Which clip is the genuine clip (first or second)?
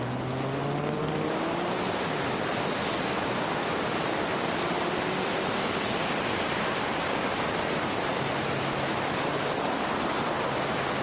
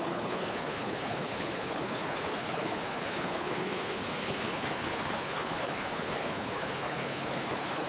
first